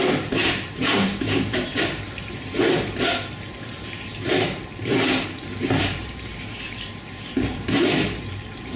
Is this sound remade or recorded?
remade